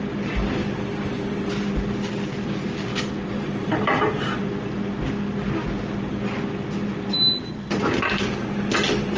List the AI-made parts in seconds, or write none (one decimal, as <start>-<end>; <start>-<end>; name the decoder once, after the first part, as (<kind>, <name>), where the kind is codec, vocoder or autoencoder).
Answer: 3.6-4.7 (vocoder, BigVGAN v2)